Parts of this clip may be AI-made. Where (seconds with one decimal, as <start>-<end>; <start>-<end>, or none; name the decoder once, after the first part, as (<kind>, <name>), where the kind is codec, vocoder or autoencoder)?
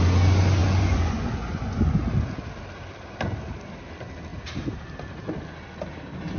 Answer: 0.6-1.9 (vocoder, Vocos)